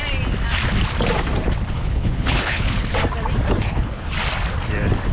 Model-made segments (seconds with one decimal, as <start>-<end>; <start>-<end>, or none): 1.7-2.9; 3.6-4.1

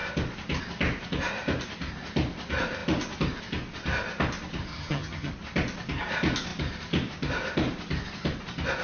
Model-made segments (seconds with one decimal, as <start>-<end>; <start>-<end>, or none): 4.7-5.3

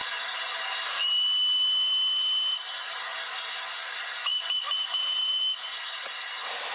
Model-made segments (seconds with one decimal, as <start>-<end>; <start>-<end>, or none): none

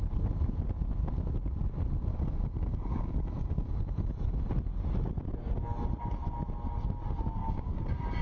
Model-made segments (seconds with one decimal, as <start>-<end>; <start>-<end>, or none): 2.1-3.7; 7.4-8.2

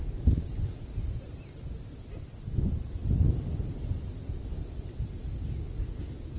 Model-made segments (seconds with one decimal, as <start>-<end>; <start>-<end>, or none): none

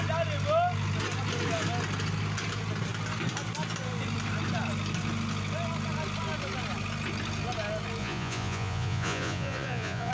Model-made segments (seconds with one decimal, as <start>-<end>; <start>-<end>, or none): 8.0-10.1